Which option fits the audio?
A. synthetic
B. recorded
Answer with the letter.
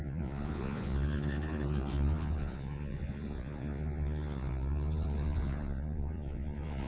A